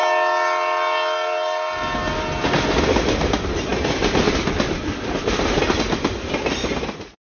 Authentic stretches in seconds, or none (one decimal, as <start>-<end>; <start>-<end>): 0.0-3.7; 5.6-7.3